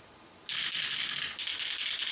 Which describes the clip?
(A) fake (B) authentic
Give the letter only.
B